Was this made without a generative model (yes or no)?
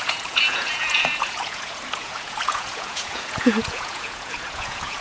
no